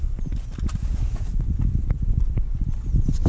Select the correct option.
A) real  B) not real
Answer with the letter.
A